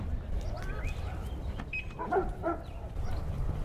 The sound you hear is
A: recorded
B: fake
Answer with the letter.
B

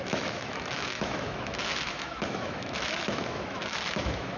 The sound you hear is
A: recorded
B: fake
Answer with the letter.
B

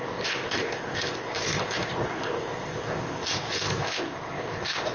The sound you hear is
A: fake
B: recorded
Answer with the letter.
A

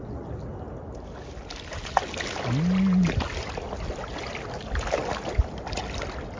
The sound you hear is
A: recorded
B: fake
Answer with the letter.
A